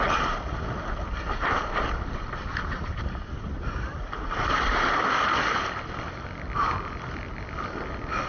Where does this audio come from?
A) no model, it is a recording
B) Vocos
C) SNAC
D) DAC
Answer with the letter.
A